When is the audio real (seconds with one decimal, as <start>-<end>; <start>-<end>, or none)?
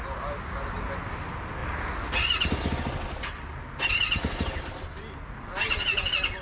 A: 0.0-6.4